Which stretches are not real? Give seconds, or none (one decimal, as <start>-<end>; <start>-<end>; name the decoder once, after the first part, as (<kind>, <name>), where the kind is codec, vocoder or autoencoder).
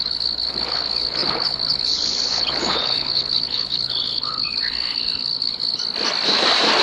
0.0-5.8 (codec, HILCodec)